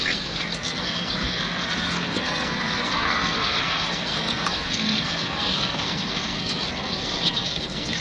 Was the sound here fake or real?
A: fake